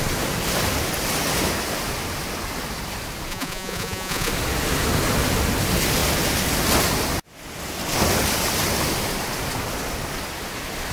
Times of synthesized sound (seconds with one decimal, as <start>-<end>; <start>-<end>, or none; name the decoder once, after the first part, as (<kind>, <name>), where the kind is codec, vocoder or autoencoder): 3.3-4.3 (vocoder, Vocos)

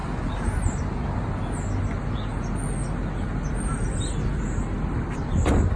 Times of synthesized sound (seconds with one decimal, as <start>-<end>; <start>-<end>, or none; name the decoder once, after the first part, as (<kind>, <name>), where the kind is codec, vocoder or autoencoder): none

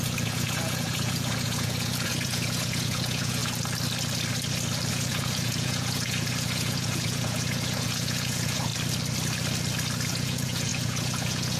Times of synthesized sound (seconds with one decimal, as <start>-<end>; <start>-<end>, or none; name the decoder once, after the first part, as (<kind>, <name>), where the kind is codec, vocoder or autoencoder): 0.0-3.4 (vocoder, Vocos); 4.9-8.7; 10.1-11.6

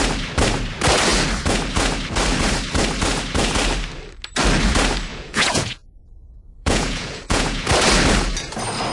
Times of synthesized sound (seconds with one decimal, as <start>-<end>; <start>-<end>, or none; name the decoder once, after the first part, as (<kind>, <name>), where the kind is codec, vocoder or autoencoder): 5.1-7.7 (vocoder, Vocos)